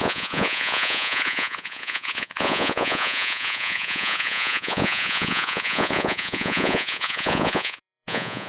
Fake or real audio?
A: fake